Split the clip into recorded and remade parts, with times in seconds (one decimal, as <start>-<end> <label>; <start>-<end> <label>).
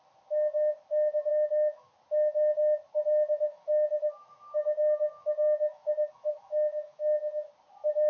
0.0-1.3 recorded; 1.3-1.9 remade; 1.9-3.5 recorded; 3.5-7.5 remade; 7.5-8.1 recorded